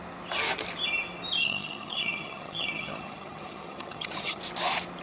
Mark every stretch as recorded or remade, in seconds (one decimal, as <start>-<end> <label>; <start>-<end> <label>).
0.0-1.4 recorded; 1.4-4.4 remade; 4.4-5.0 recorded